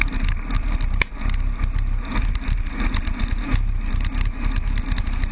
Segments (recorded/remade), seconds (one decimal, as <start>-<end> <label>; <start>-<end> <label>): 0.0-5.3 recorded